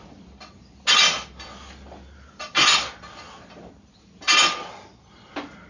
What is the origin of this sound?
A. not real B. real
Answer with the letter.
B